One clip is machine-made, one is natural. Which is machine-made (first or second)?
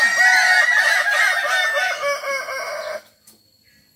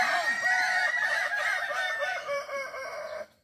second